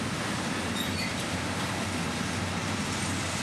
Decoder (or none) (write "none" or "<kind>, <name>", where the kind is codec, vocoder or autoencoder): none